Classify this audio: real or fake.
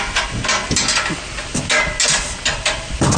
real